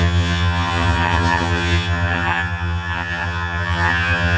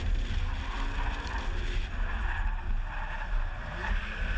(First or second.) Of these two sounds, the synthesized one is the first